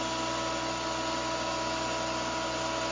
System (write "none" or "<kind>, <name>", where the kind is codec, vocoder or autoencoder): none